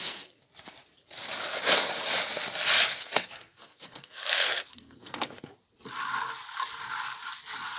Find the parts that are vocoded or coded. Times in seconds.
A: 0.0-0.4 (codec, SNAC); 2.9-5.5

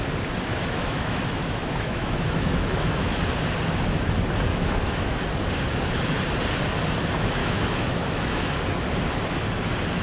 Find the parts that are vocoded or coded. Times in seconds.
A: 0.5-3.2 (autoencoder, DAC-VAE); 4.5-5.2; 7.4-8.6

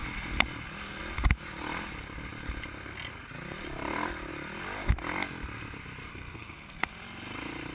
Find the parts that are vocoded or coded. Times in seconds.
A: 6.1-6.9 (codec, SNAC)

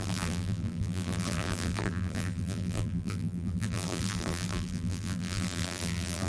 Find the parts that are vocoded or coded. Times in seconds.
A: 0.0-6.3 (vocoder, BigVGAN v2)

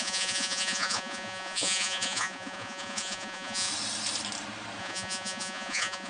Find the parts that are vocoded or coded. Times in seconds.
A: 0.0-3.7 (vocoder, Vocos); 4.8-6.1

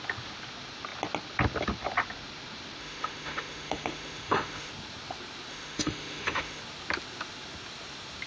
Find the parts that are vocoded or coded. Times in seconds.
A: 2.8-4.7 (autoencoder, DAC-VAE); 5.5-6.6